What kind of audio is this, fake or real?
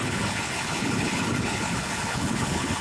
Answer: fake